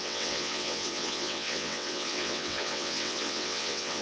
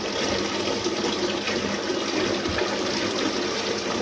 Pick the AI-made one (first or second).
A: first